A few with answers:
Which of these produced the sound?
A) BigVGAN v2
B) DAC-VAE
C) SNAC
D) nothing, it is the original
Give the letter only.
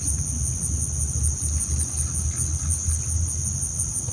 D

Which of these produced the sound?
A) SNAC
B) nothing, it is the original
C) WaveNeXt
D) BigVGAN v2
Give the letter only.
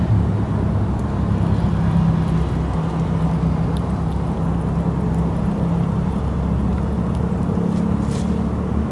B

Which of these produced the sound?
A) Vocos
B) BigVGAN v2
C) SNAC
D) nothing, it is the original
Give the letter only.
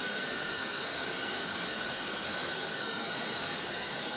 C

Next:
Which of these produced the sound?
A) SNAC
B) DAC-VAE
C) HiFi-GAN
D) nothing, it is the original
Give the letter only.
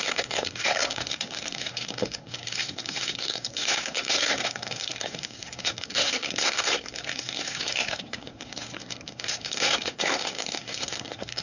A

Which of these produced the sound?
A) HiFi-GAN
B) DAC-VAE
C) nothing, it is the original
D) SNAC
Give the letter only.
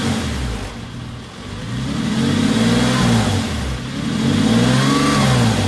C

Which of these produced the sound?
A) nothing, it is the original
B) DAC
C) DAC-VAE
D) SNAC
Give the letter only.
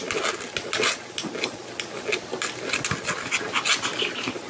A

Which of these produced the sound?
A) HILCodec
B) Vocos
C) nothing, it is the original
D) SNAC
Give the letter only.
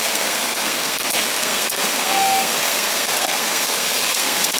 D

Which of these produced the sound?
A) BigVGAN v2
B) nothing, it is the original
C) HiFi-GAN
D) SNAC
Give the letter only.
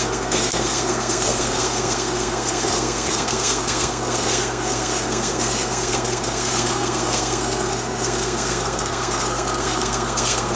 D